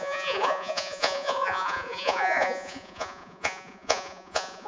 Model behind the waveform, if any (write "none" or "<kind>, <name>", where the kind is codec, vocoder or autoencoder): vocoder, Vocos